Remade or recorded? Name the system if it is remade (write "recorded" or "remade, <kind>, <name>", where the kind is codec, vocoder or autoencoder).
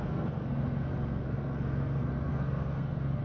remade, codec, SNAC